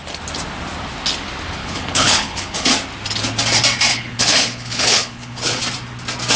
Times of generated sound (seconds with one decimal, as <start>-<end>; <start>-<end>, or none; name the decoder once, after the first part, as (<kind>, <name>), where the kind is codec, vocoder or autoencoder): 1.6-2.7 (codec, HILCodec); 3.9-5.6